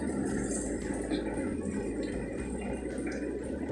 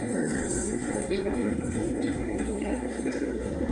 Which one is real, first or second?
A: first